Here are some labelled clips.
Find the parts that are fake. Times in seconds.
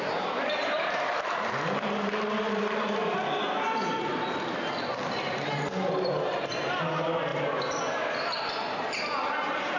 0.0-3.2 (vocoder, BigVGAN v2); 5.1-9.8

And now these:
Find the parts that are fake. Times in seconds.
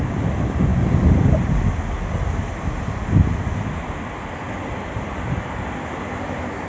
none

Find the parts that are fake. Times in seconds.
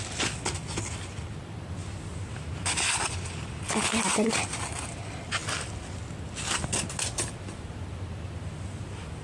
none